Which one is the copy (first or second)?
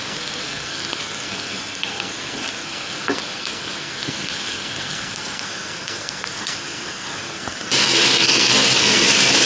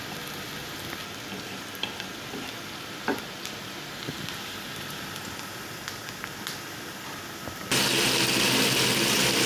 first